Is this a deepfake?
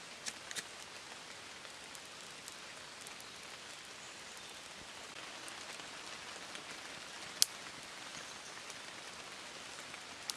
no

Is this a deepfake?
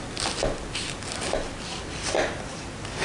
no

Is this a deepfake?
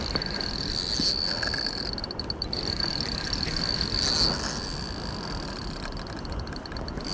no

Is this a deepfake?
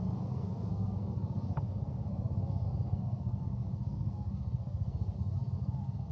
yes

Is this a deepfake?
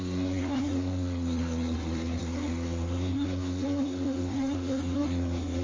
yes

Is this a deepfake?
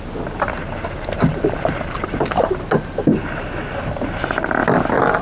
no